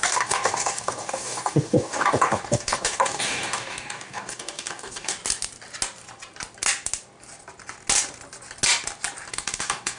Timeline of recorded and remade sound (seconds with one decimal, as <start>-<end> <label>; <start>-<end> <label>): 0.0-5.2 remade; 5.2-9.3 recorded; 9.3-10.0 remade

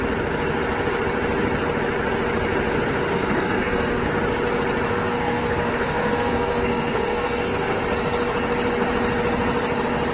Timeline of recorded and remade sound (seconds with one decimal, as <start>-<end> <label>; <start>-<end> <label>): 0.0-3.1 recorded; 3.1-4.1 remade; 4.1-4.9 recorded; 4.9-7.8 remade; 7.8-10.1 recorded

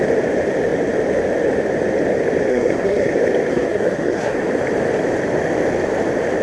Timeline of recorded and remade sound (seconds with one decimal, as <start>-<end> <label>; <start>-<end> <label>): 0.0-2.5 recorded; 2.5-3.1 remade; 3.1-3.5 recorded; 3.5-4.3 remade; 4.3-6.4 recorded

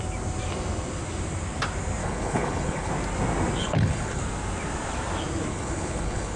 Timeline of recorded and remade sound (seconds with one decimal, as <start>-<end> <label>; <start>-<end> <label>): 0.0-2.0 recorded; 2.0-2.9 remade; 2.9-3.6 recorded; 3.6-4.2 remade; 4.2-5.5 recorded; 5.5-6.4 remade